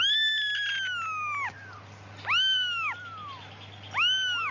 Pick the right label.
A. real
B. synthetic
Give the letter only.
A